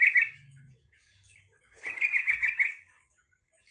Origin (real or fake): fake